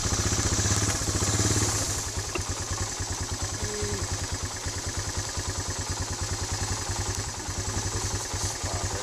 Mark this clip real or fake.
real